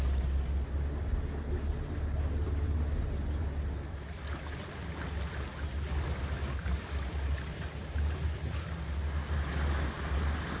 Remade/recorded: recorded